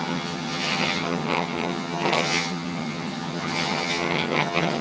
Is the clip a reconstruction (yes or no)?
yes